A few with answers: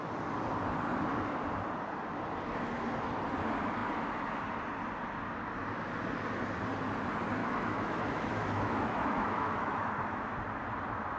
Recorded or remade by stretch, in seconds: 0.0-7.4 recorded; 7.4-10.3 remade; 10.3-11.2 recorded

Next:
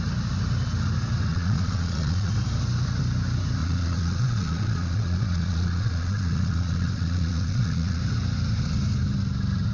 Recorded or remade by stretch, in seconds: 0.0-1.3 recorded; 1.3-2.3 remade; 2.3-3.6 recorded; 3.6-8.0 remade; 8.0-9.7 recorded

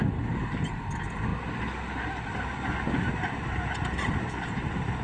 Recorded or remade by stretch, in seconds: 0.0-5.0 recorded

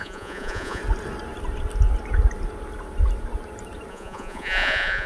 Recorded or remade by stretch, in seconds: 0.0-0.8 remade; 0.8-3.9 recorded; 3.9-5.1 remade

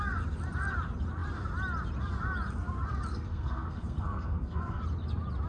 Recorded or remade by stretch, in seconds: 0.0-3.1 recorded; 3.1-4.8 remade; 4.8-5.5 recorded